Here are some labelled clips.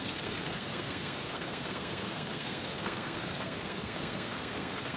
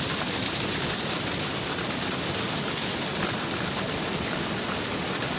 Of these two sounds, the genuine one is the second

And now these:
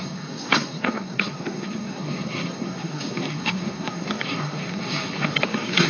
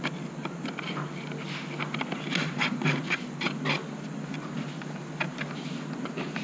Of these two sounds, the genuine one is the second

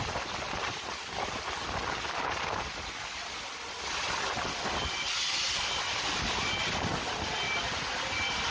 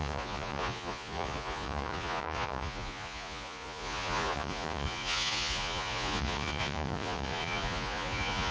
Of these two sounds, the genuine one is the first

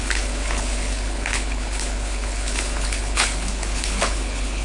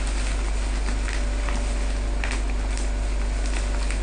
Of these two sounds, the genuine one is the second